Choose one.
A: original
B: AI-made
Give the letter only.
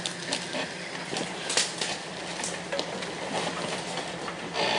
A